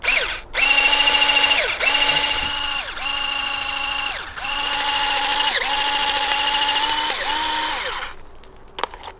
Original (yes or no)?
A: yes